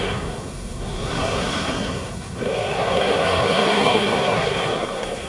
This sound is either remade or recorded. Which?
remade